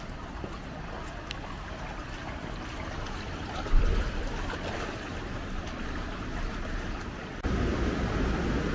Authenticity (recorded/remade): recorded